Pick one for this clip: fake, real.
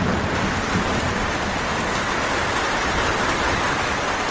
fake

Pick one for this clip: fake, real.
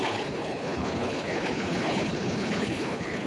fake